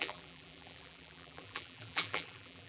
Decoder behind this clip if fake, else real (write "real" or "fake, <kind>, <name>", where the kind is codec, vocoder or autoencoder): fake, vocoder, BigVGAN v2